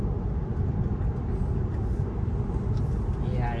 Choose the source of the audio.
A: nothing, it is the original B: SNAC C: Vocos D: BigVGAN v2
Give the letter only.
A